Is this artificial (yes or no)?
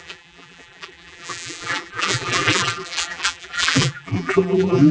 yes